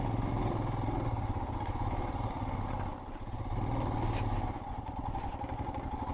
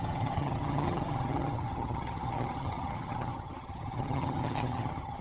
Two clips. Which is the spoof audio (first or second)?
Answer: second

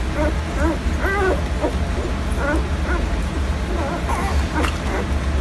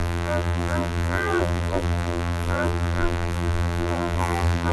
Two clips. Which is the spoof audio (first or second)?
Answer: second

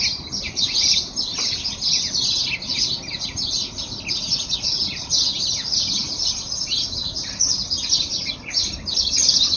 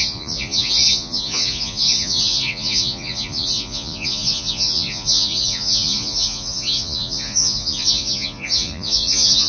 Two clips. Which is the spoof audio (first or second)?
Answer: second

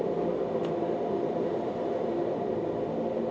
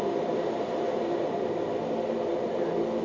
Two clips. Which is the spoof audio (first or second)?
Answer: first